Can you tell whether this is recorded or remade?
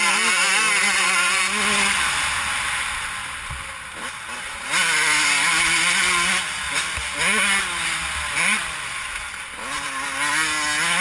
recorded